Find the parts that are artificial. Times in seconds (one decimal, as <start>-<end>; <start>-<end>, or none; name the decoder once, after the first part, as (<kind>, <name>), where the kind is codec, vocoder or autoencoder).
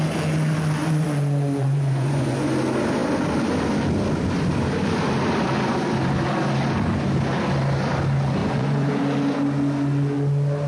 0.8-2.5 (vocoder, Vocos); 8.4-8.9